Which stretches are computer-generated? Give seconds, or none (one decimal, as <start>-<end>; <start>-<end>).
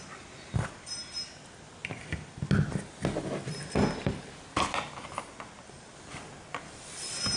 none